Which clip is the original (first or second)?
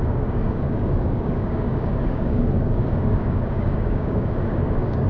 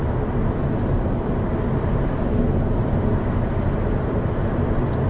second